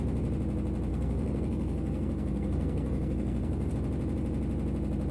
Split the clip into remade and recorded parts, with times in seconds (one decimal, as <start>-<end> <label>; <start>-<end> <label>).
0.0-0.9 recorded; 0.9-3.7 remade; 3.7-5.1 recorded